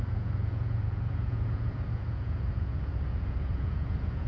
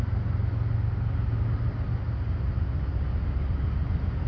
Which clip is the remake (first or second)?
first